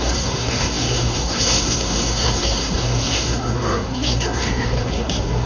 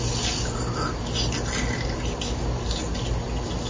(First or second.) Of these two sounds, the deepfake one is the first